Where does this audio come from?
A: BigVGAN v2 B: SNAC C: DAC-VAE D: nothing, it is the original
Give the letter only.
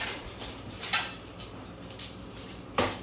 A